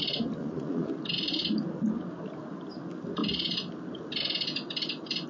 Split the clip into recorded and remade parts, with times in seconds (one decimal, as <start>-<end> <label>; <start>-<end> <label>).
0.0-0.4 recorded; 0.4-0.9 remade; 0.9-5.3 recorded